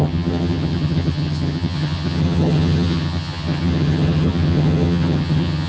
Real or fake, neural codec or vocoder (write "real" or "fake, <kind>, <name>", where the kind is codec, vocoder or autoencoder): fake, vocoder, HiFi-GAN